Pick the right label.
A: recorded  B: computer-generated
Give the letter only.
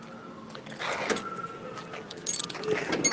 A